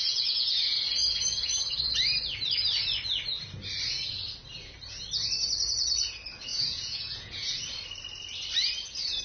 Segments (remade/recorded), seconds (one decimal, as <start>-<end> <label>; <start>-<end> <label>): 0.0-0.6 remade; 0.6-6.5 recorded; 6.5-7.5 remade; 7.5-9.2 recorded